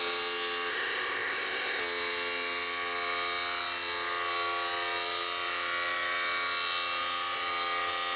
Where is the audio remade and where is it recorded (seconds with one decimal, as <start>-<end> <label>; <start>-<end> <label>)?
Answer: 0.0-0.7 recorded; 0.7-1.8 remade; 1.8-8.2 recorded